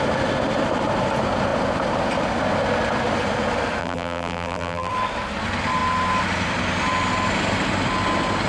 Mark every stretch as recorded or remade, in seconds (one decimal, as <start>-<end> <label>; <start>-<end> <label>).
0.0-3.8 recorded; 3.8-4.9 remade; 4.9-8.5 recorded